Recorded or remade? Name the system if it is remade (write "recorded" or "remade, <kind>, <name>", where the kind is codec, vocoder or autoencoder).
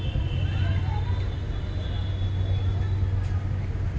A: recorded